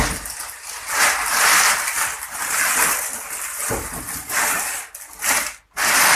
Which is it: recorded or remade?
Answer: recorded